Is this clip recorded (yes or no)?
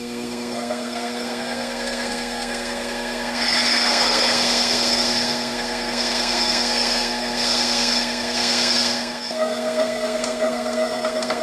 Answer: no